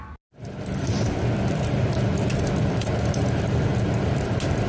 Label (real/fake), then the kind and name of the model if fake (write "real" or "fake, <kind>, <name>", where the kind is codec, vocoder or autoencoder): fake, vocoder, BigVGAN v2